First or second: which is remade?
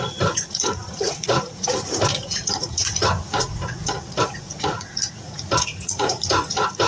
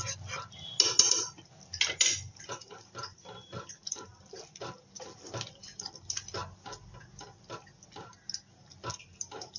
first